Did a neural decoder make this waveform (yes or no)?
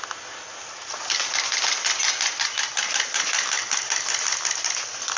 no